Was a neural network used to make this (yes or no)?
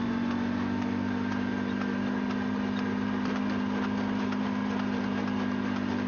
no